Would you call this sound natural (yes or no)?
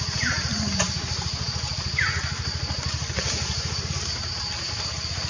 yes